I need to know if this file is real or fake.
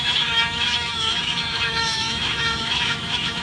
fake